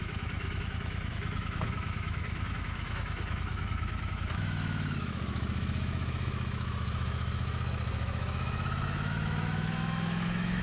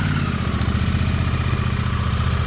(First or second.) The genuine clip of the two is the second